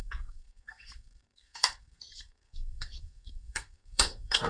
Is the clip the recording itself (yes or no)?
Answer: no